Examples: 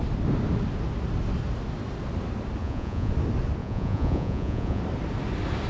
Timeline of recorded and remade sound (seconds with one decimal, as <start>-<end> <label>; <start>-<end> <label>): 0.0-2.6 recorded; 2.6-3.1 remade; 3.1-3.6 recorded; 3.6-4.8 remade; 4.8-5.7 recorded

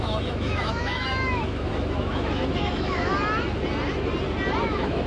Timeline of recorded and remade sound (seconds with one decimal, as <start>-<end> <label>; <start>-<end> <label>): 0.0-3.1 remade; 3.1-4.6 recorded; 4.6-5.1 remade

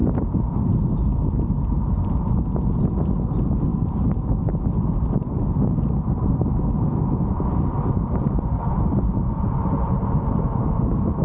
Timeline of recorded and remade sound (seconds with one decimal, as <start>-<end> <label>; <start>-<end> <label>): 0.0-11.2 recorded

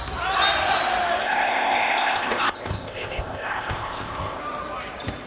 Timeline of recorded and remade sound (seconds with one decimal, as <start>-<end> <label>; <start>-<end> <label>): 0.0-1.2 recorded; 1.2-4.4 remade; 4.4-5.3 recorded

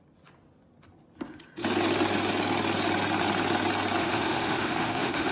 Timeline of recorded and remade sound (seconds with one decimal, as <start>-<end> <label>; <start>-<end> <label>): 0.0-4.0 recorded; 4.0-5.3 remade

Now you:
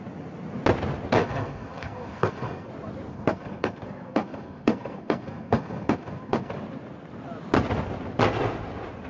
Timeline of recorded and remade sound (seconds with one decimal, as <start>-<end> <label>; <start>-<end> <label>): 0.0-1.2 recorded; 1.2-2.7 remade; 2.7-3.1 recorded; 3.1-6.5 remade; 6.5-9.1 recorded